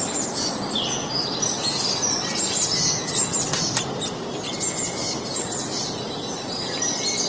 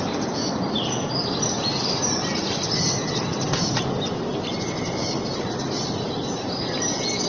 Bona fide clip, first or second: first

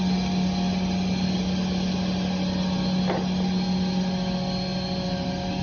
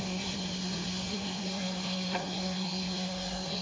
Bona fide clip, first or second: first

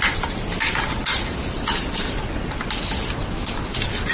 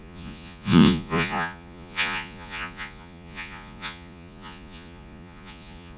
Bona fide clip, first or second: first